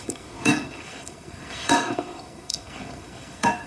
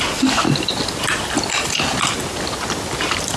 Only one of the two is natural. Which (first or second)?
second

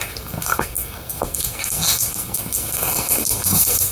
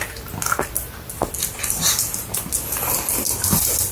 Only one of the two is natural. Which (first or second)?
second